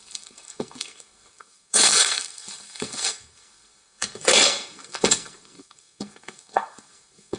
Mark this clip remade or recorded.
remade